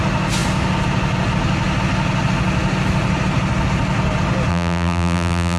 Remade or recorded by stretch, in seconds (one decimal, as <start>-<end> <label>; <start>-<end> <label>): 0.0-4.5 recorded; 4.5-5.6 remade